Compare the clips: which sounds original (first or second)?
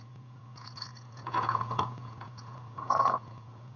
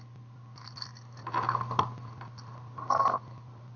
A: second